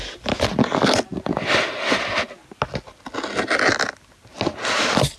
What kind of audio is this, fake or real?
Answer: real